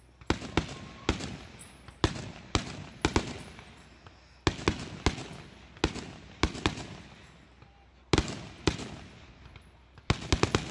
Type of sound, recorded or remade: recorded